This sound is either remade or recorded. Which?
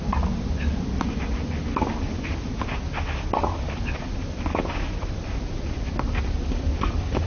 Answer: recorded